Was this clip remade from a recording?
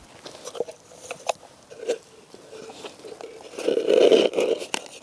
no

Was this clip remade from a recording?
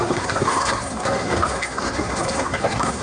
yes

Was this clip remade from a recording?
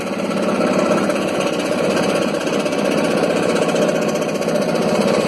yes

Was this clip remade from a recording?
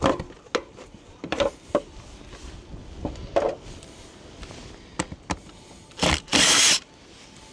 no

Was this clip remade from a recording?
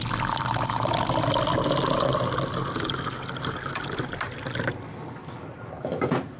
no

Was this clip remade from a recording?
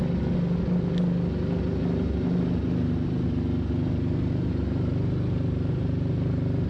no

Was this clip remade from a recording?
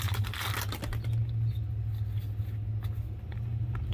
no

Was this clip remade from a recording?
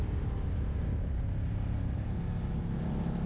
no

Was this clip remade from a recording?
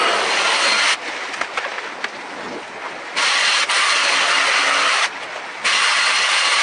no